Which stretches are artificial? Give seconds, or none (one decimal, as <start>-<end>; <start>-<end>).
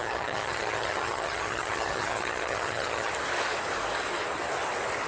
0.0-3.1